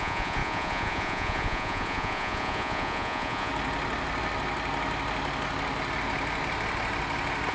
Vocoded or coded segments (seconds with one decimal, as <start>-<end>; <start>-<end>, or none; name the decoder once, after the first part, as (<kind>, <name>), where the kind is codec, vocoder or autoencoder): 0.0-3.5 (vocoder, Vocos)